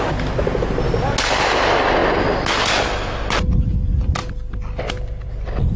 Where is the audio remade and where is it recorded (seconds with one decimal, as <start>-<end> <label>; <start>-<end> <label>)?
0.0-5.8 recorded